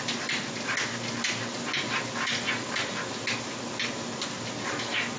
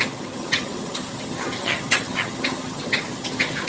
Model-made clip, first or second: second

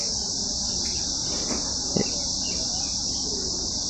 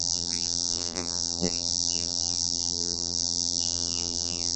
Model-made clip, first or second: second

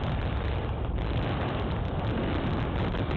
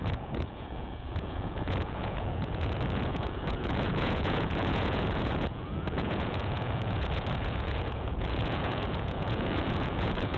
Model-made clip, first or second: second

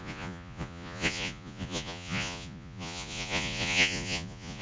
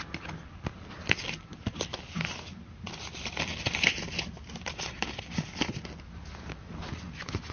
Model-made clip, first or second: first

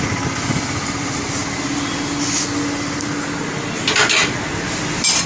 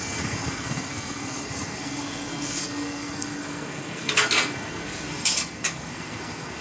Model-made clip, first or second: second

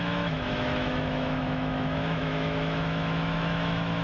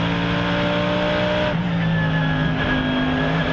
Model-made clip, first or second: first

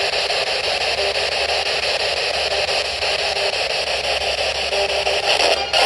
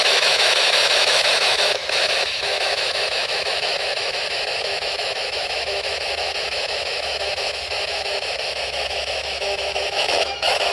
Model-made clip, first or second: second